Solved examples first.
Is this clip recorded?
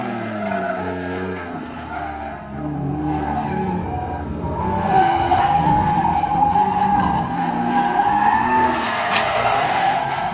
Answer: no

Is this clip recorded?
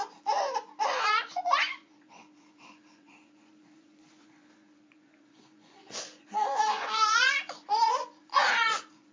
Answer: no